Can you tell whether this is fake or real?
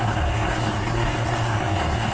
fake